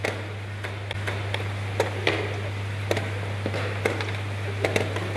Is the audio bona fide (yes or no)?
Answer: yes